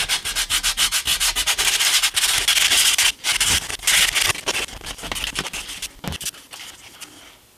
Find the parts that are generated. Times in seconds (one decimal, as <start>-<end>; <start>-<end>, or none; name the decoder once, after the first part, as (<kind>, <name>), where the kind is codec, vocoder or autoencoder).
none